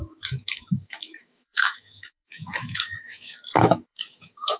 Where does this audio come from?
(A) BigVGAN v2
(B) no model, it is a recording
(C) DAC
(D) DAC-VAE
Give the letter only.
D